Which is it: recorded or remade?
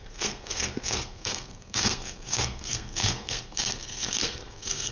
remade